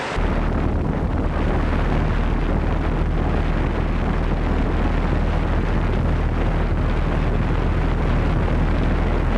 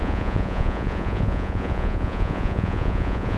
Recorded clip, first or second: first